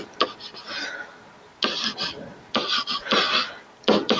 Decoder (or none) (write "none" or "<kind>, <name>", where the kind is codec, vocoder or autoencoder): none